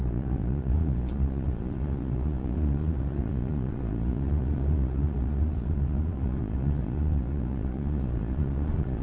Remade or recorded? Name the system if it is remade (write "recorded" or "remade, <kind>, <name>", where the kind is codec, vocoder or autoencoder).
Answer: remade, vocoder, Vocos